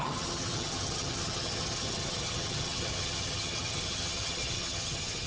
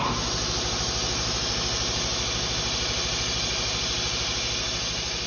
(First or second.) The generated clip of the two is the first